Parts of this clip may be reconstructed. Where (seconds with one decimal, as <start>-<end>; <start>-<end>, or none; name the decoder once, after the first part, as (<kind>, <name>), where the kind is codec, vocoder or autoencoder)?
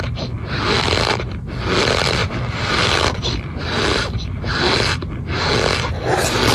2.2-4.2 (vocoder, BigVGAN v2)